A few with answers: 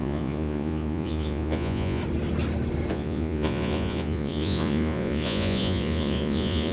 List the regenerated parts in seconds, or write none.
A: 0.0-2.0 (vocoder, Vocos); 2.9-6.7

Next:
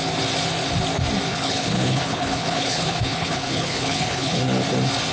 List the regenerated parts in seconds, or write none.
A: 1.3-4.4 (codec, HILCodec)

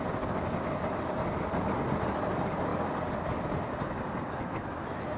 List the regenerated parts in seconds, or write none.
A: none